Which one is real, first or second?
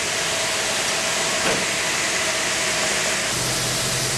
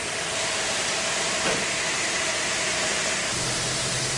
first